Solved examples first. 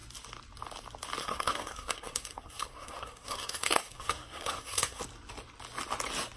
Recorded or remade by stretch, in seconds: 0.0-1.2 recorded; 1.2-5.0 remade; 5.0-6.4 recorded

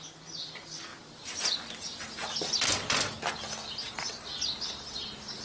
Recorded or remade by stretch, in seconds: 0.0-5.4 recorded

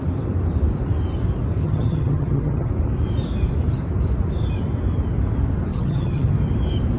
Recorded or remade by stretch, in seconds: 0.0-1.6 recorded; 1.6-2.7 remade; 2.7-5.7 recorded; 5.7-6.3 remade; 6.3-7.0 recorded

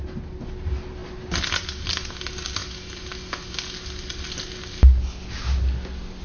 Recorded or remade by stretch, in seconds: 0.0-6.2 recorded

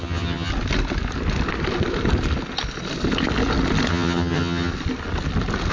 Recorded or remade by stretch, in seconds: 0.0-0.5 remade; 0.5-3.9 recorded; 3.9-4.7 remade; 4.7-5.7 recorded

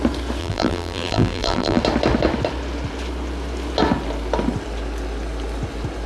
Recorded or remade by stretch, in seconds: 0.0-0.4 recorded; 0.4-1.8 remade; 1.8-6.1 recorded

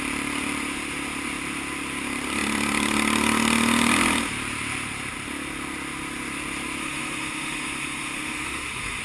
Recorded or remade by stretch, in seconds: 0.0-6.8 recorded; 6.8-9.0 remade

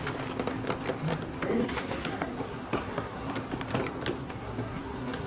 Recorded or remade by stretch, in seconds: 0.0-1.6 recorded; 1.6-3.3 remade; 3.3-4.2 recorded; 4.2-5.3 remade